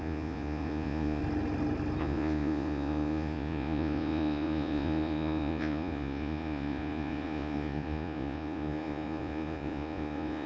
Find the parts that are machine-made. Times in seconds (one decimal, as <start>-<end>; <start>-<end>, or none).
0.0-1.2; 2.0-10.5

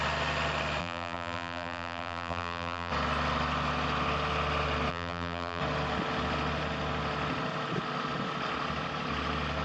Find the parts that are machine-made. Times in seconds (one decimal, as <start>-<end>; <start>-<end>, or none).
0.8-2.9; 4.9-5.6